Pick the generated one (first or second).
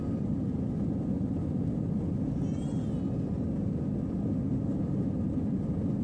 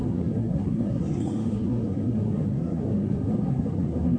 second